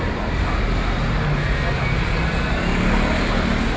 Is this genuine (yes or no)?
yes